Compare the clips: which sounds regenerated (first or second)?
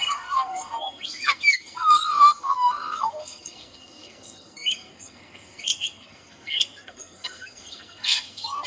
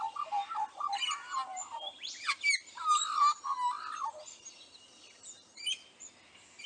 first